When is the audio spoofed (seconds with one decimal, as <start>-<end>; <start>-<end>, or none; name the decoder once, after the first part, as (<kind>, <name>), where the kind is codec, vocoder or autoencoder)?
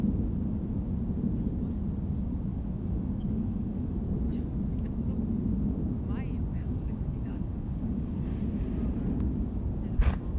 2.5-4.0 (codec, DAC); 6.5-8.4